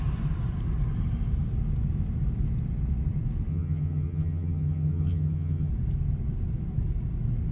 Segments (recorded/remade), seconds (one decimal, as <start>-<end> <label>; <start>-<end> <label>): 0.0-3.5 recorded; 3.5-5.7 remade; 5.7-7.5 recorded